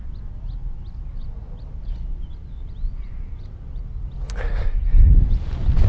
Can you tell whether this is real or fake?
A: real